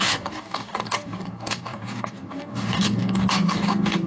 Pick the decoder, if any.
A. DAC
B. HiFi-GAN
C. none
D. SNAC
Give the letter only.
A